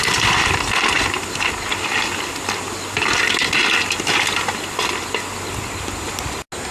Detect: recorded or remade recorded